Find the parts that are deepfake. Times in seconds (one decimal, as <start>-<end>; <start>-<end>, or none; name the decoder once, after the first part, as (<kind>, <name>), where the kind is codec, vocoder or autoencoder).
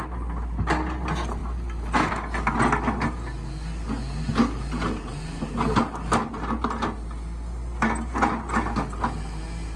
none